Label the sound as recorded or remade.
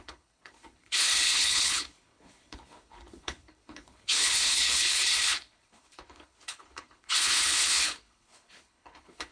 remade